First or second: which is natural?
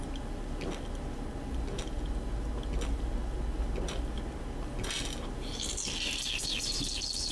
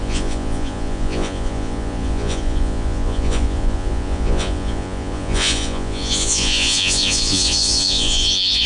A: first